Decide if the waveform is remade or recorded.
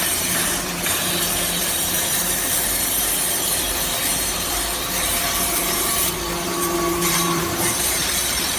remade